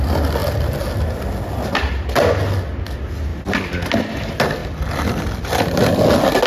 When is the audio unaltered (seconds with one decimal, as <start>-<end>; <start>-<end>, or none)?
0.0-6.5